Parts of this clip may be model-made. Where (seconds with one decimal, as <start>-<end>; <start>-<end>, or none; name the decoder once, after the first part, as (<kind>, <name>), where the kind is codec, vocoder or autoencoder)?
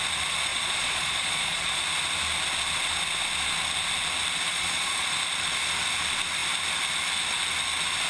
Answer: 0.5-1.8 (vocoder, Vocos); 4.5-5.1